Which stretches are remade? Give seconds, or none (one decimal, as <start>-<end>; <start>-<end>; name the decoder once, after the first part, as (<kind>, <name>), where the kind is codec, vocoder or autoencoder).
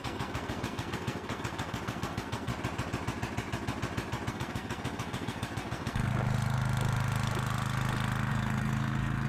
0.0-2.5 (codec, SNAC); 4.3-6.1; 8.3-9.3